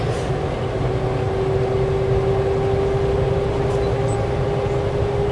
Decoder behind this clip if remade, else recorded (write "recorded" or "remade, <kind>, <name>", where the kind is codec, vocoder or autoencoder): recorded